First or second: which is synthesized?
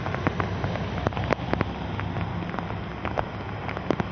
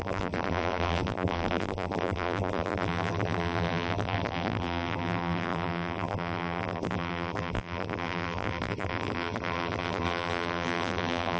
second